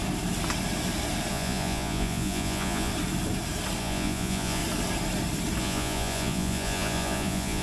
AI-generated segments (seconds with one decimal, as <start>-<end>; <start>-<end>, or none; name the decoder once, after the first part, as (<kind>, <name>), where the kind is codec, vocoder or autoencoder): 1.3-2.9 (vocoder, Vocos); 3.8-4.6; 5.6-7.6